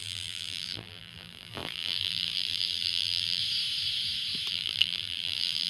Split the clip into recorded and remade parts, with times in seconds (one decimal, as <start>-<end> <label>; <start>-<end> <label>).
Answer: 0.0-3.4 remade; 3.4-4.5 recorded; 4.5-5.7 remade